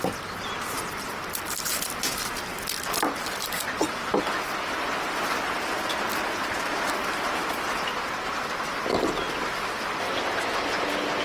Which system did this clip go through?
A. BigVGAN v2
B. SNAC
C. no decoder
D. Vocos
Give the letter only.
C